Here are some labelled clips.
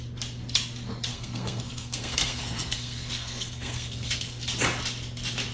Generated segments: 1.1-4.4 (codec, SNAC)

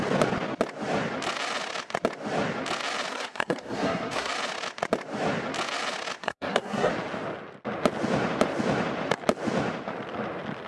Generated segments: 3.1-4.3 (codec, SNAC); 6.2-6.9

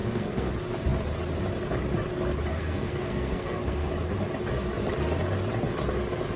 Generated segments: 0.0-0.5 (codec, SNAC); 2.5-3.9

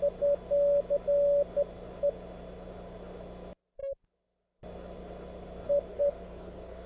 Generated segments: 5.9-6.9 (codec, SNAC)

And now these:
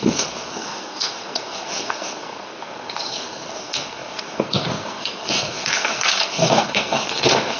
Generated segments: 0.0-7.6 (codec, SNAC)

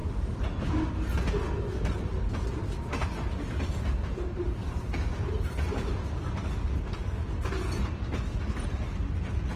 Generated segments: none

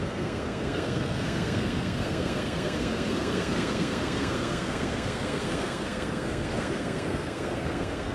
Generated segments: 0.0-8.1 (codec, SNAC)

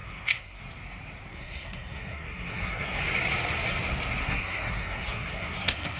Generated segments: 0.0-0.6 (codec, SNAC); 1.3-3.0; 4.2-6.0